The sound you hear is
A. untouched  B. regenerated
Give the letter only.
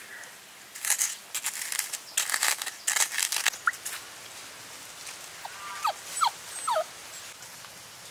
A